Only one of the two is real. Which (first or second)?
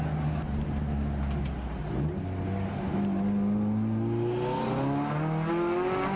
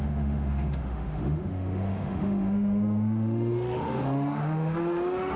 first